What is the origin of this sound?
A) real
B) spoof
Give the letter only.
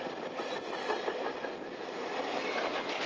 A